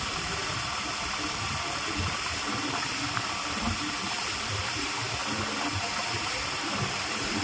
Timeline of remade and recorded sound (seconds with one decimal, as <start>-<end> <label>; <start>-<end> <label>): 0.0-5.2 remade; 5.2-5.7 recorded; 5.7-7.4 remade